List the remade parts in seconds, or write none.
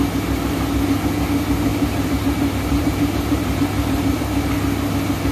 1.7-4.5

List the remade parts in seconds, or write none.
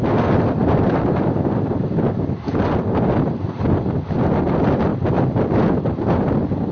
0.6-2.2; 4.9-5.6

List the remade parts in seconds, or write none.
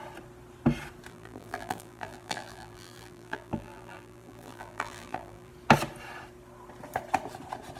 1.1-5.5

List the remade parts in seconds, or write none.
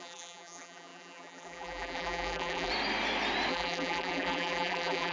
0.0-2.7; 3.5-5.1